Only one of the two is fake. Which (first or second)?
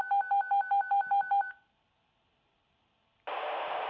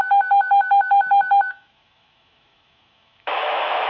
second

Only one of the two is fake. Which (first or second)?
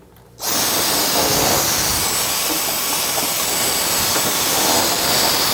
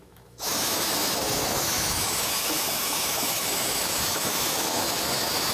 second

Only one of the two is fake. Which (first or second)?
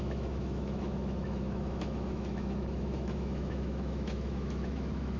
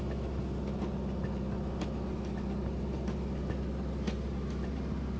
first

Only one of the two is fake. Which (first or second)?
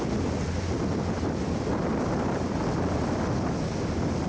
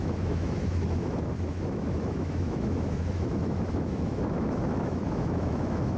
second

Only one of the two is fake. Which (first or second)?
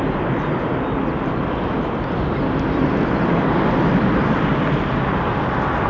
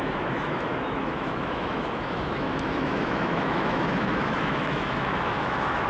second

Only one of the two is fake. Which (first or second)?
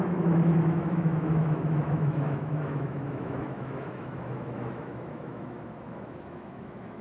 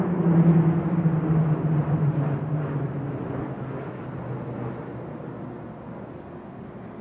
first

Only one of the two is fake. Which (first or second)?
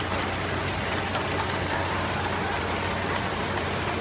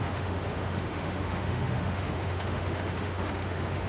second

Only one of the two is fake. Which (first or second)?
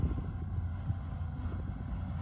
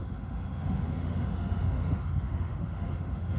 second